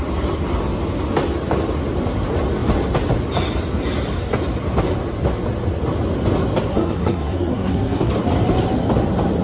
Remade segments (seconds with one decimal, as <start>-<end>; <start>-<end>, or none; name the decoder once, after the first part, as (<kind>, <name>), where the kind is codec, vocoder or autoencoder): 6.7-8.1 (codec, SNAC)